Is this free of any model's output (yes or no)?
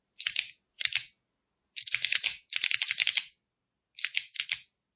yes